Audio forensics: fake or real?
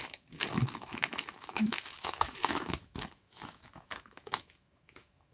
fake